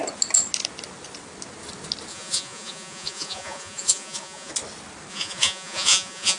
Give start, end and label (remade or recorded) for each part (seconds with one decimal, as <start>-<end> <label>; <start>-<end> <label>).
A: 0.0-2.1 recorded; 2.1-4.5 remade; 4.5-5.1 recorded; 5.1-6.4 remade